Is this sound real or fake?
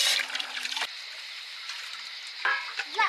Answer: real